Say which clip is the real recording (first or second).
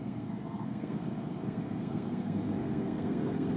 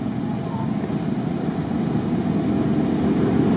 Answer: second